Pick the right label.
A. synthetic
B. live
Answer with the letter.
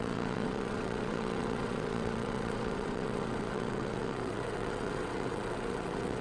A